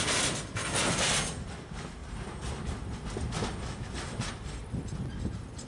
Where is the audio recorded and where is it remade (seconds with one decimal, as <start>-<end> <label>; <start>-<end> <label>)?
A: 0.0-5.7 recorded

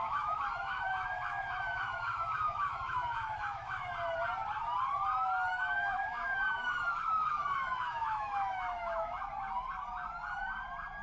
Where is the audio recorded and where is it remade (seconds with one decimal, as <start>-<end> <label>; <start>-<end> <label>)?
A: 0.0-3.9 remade; 3.9-5.5 recorded; 5.5-9.2 remade; 9.2-11.0 recorded

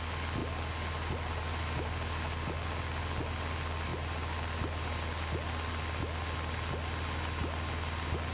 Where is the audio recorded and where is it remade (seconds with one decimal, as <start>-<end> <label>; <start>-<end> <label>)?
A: 0.0-8.3 recorded

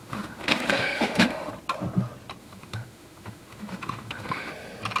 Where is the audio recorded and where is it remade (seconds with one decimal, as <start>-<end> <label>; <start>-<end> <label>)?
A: 0.0-1.5 remade; 1.5-2.4 recorded; 2.4-4.5 remade; 4.5-5.0 recorded

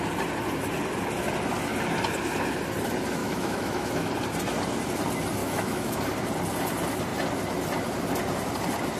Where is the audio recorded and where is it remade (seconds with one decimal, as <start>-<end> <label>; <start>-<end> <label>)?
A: 0.0-3.2 recorded; 3.2-4.1 remade; 4.1-5.4 recorded; 5.4-6.0 remade; 6.0-9.0 recorded

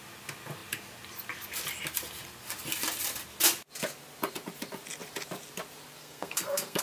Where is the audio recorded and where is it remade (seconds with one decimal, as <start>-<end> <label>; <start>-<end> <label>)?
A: 0.0-6.0 recorded; 6.0-6.8 remade

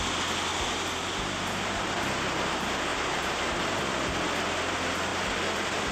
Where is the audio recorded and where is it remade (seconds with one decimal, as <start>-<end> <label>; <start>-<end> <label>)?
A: 0.0-0.5 recorded; 0.5-2.0 remade; 2.0-2.9 recorded; 2.9-3.6 remade; 3.6-5.9 recorded

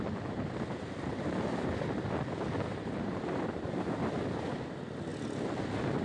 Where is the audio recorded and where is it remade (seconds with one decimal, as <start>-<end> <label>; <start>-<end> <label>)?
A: 0.0-1.1 recorded; 1.1-1.7 remade; 1.7-2.7 recorded; 2.7-3.4 remade; 3.4-6.0 recorded